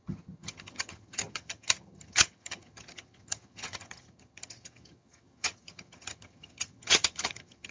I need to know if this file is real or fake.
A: fake